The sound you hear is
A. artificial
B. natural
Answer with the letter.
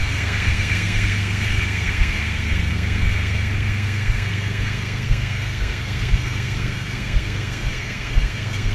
A